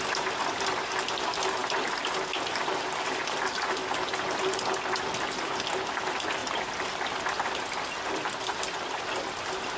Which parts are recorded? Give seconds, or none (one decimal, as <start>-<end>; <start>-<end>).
0.0-9.8